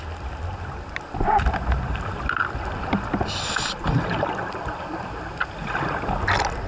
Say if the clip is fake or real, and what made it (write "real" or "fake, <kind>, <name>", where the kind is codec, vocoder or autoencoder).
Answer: real